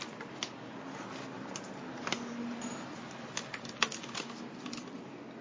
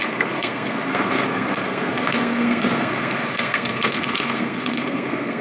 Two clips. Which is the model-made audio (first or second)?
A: second